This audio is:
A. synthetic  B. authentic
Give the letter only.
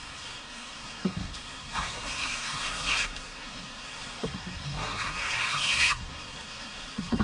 A